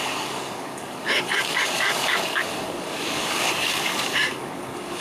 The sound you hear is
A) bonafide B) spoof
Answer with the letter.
B